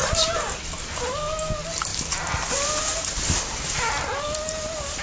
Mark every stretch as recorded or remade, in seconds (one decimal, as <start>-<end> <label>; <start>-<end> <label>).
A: 0.0-5.0 recorded